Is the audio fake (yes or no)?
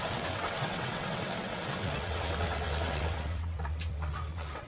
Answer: yes